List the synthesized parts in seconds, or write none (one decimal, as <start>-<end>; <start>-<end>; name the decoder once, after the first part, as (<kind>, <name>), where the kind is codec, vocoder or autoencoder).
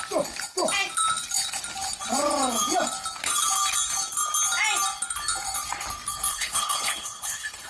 6.3-7.7 (codec, HILCodec)